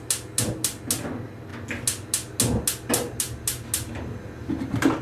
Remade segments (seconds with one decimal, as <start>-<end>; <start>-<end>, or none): none